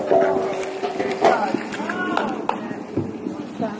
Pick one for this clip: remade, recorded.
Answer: recorded